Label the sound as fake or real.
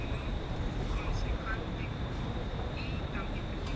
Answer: fake